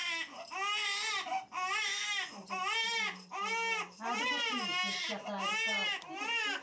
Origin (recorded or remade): recorded